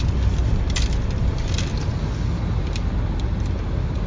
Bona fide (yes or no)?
yes